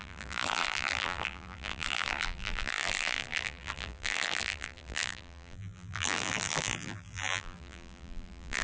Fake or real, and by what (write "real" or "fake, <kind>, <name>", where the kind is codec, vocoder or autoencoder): fake, vocoder, BigVGAN v2